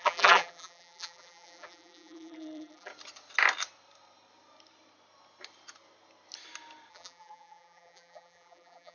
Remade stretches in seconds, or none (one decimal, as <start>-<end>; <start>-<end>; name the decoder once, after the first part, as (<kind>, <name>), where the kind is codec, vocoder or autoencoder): 0.0-2.9 (vocoder, BigVGAN v2); 6.9-8.9